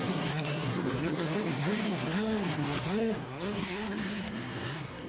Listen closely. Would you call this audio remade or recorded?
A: remade